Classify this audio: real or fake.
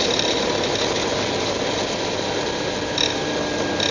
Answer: real